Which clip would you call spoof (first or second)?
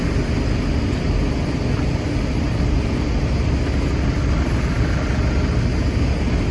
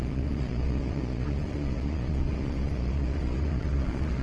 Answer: second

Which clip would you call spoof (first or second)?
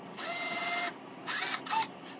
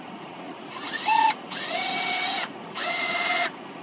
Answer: second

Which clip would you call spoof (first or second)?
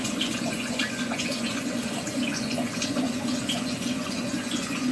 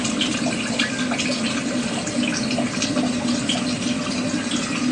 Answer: first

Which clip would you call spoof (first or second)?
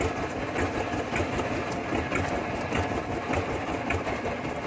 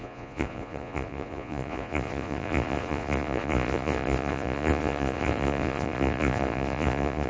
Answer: second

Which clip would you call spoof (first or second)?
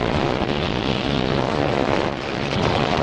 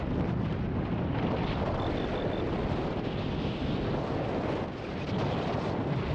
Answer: first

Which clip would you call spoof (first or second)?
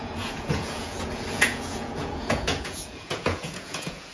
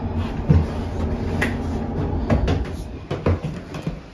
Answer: first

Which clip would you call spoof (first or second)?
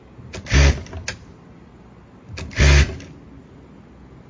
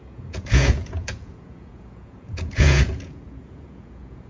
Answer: second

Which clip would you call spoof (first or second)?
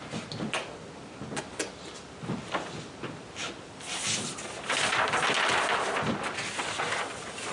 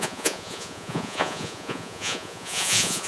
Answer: second